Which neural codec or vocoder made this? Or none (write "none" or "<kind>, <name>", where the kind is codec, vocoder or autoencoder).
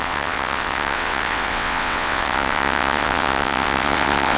vocoder, WaveNeXt